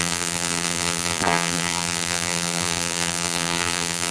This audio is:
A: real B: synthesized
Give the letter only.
B